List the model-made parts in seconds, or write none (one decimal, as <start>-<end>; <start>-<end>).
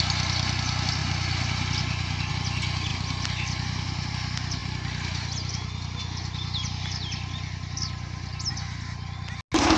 none